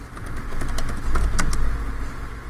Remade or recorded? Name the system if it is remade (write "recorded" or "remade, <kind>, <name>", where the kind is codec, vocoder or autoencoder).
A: recorded